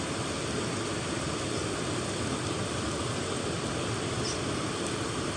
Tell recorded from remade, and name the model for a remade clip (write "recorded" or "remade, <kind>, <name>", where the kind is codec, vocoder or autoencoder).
recorded